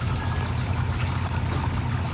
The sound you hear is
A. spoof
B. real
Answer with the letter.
B